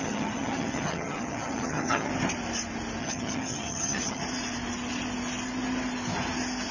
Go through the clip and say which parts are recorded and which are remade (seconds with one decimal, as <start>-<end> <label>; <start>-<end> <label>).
0.0-2.1 remade; 2.1-3.0 recorded; 3.0-4.2 remade; 4.2-6.7 recorded